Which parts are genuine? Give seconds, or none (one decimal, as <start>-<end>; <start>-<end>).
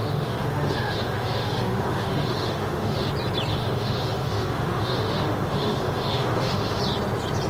3.1-3.5; 6.8-7.5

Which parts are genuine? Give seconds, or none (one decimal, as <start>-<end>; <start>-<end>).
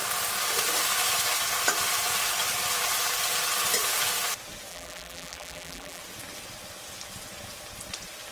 0.0-4.7; 6.0-8.3